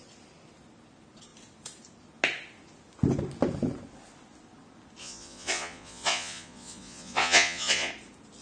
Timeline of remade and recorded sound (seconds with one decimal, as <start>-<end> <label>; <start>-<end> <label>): 0.0-5.0 recorded; 5.0-7.9 remade; 7.9-8.4 recorded